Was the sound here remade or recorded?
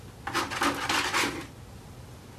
recorded